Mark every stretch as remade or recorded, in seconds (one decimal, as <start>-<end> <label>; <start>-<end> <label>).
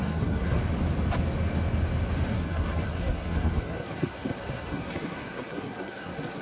0.0-0.6 remade; 0.6-2.3 recorded; 2.3-6.4 remade